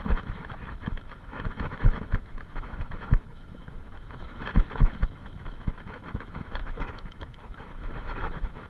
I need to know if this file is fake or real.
fake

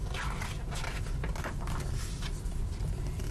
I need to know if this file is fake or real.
real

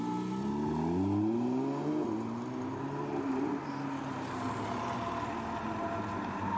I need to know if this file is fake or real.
real